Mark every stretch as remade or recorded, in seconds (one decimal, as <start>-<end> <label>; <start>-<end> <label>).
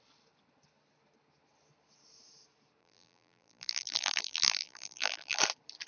0.0-2.8 recorded; 2.8-5.4 remade; 5.4-5.9 recorded